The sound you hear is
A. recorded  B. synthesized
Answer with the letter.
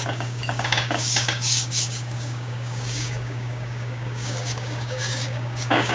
B